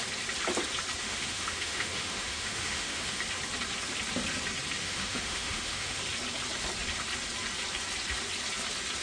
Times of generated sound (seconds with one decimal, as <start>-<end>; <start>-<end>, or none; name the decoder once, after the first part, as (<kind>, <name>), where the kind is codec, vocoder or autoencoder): 1.0-3.2 (autoencoder, DAC-VAE); 4.8-6.0

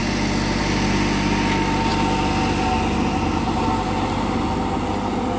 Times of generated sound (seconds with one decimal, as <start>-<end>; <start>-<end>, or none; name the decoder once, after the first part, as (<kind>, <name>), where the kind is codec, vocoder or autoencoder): none

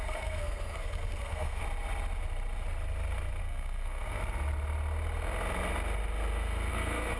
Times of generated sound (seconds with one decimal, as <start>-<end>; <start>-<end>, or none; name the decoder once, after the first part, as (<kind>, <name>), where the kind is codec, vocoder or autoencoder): 0.0-1.6 (codec, SNAC); 3.4-4.2; 6.7-7.2

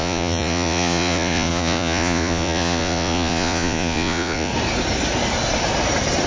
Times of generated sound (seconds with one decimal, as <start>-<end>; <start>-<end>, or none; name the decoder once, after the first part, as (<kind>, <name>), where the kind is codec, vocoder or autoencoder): 0.0-4.5 (vocoder, Vocos)

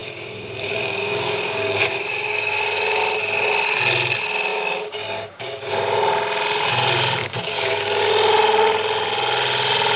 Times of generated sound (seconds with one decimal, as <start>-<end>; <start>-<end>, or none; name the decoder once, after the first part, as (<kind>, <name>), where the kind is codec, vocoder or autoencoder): 0.0-3.0 (codec, DAC); 4.5-5.7; 7.2-8.1

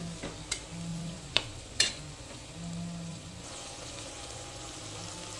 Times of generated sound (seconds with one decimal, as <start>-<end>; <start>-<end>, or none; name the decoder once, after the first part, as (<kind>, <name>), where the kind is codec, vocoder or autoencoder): 0.9-2.5 (vocoder, Vocos); 3.1-4.8